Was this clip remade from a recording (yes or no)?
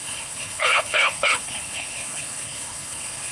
yes